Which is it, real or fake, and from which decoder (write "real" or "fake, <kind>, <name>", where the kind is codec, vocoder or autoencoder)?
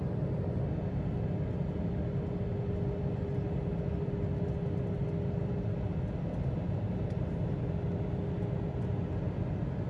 real